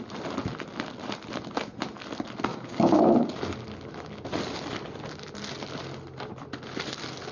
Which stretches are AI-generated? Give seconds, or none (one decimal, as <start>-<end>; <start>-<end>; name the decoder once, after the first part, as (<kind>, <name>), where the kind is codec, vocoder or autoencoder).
2.5-3.1 (codec, DAC)